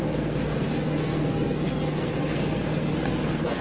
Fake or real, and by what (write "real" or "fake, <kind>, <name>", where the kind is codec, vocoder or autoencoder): fake, codec, SNAC